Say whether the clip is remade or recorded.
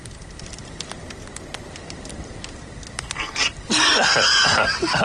recorded